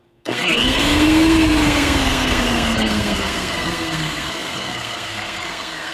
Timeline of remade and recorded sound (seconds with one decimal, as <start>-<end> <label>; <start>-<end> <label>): 0.0-5.9 remade